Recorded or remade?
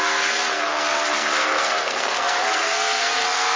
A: remade